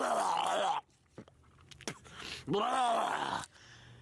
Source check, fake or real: real